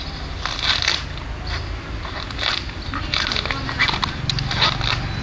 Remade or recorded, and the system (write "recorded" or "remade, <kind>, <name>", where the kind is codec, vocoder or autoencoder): recorded